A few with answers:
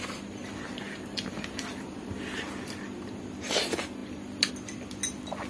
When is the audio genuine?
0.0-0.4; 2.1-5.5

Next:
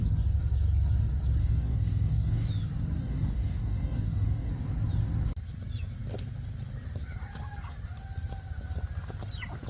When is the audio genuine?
0.0-1.4; 2.5-3.0; 4.5-9.7

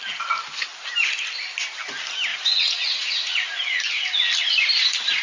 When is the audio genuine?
0.0-2.3; 3.8-5.2

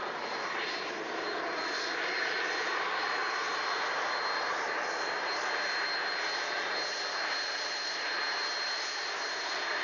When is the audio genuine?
0.0-9.8

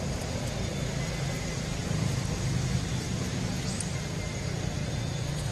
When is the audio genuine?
0.0-4.8

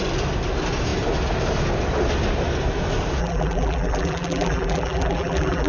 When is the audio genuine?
0.0-3.2

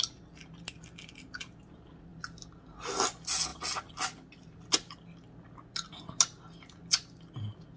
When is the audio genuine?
0.0-7.8